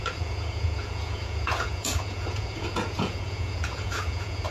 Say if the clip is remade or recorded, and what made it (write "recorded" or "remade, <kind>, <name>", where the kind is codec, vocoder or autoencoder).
remade, vocoder, Vocos